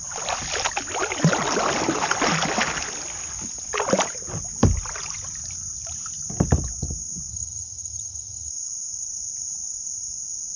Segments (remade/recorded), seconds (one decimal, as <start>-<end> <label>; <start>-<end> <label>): 0.0-7.3 recorded; 7.3-8.5 remade; 8.5-10.6 recorded